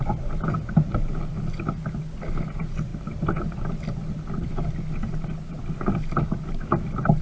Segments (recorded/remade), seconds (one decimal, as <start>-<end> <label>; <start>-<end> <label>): 0.0-7.2 recorded